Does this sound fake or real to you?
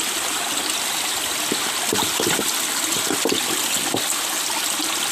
real